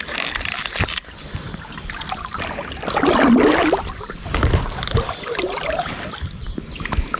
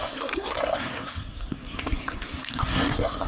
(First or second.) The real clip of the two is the first